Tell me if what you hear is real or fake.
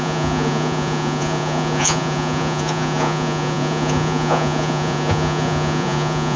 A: fake